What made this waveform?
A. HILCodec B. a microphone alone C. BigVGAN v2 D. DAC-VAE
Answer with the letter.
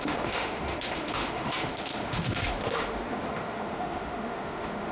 D